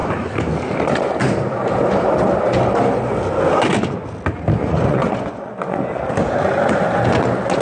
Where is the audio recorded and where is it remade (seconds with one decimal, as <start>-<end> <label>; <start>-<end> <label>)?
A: 0.0-4.6 recorded; 4.6-6.0 remade; 6.0-7.6 recorded

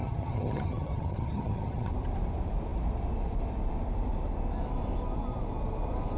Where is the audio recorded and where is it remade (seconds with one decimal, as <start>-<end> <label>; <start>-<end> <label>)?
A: 0.0-1.9 remade; 1.9-6.2 recorded